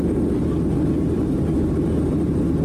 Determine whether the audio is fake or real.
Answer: real